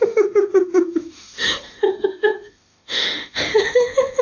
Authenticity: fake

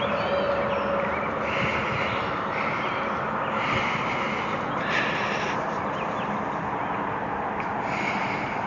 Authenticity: real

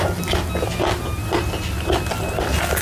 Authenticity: real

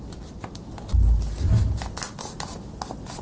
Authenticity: real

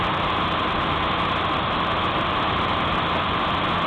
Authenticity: real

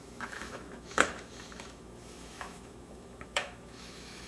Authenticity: fake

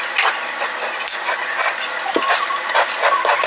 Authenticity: real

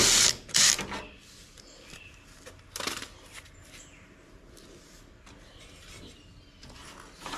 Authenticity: real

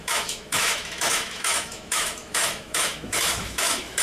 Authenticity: fake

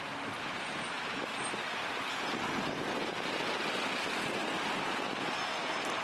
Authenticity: real